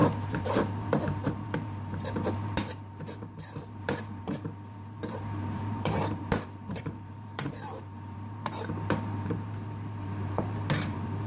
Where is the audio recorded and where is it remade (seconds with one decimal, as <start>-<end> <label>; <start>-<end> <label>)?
0.0-11.3 remade